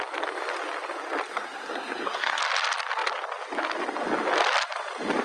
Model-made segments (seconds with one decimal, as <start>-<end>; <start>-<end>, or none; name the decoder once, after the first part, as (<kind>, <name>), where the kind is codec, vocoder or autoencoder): 1.3-2.4 (codec, SNAC)